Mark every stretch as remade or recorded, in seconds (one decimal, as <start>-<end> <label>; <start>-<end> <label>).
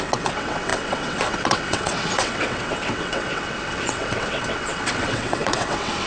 0.0-6.1 remade